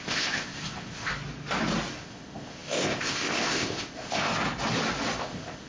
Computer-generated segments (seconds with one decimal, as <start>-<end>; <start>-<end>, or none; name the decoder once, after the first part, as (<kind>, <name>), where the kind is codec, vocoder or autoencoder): 0.0-1.1 (codec, ZipCodec); 2.0-4.3; 5.2-5.7